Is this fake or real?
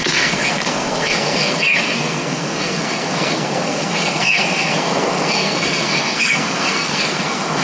fake